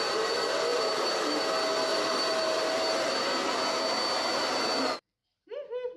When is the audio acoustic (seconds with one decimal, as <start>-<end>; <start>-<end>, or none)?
0.0-0.7; 1.4-1.9; 3.1-6.0